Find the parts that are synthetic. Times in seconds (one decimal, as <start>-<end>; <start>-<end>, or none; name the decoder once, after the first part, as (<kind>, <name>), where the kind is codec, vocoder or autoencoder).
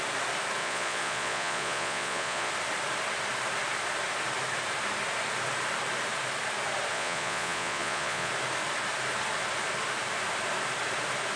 0.6-2.5 (vocoder, Vocos); 6.9-8.3